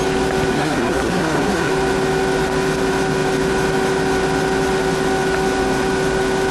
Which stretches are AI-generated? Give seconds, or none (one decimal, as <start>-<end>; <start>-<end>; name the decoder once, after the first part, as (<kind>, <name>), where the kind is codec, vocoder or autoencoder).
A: 0.5-1.7 (codec, SNAC)